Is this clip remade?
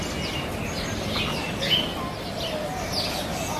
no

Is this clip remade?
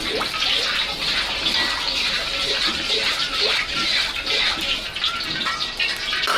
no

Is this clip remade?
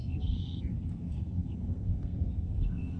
yes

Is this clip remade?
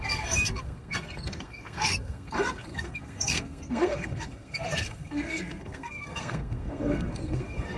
yes